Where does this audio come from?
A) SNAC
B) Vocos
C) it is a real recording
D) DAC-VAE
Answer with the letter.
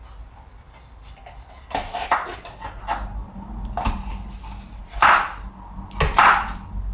C